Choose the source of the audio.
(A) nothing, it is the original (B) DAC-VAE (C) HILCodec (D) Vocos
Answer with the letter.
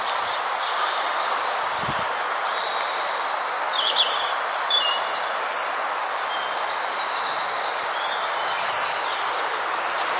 A